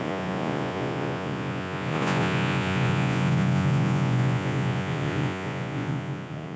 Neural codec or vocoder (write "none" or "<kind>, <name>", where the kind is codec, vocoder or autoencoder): vocoder, Vocos